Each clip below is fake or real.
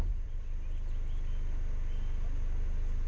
real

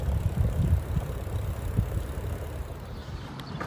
fake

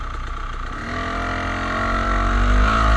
real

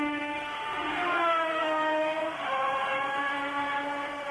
fake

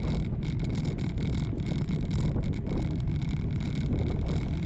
real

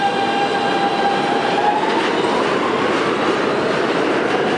real